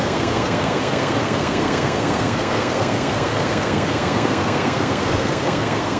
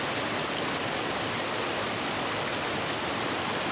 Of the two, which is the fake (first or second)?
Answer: first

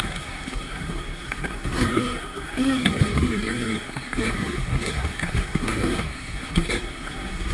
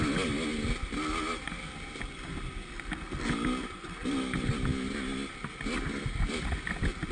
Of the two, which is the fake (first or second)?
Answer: first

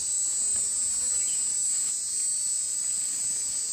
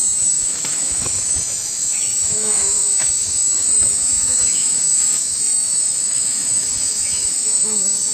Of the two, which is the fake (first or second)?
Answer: second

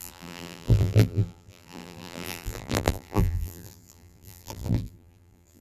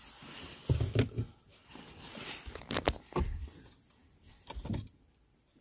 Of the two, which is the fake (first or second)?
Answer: first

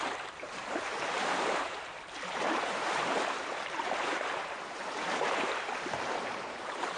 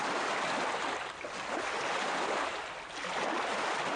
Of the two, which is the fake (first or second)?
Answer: first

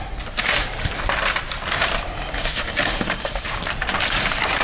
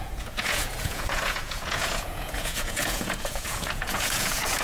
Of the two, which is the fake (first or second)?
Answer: second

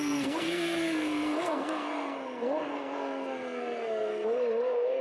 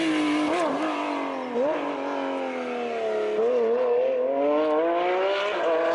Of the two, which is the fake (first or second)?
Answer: first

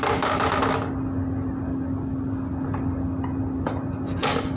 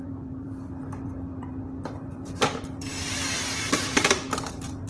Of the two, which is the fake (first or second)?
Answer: second